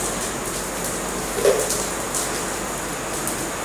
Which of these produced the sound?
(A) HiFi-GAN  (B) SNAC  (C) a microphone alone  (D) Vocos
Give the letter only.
C